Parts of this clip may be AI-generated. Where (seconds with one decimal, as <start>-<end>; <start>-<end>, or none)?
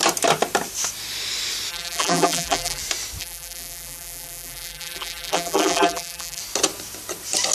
1.7-2.8; 3.2-6.4